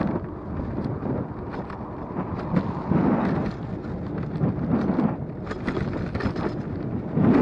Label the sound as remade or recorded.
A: recorded